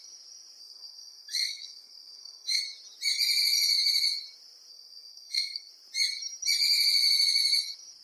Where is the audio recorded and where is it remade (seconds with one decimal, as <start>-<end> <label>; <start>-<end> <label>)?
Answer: 0.0-0.6 recorded; 0.6-2.6 remade; 2.6-4.7 recorded; 4.7-5.7 remade; 5.7-8.0 recorded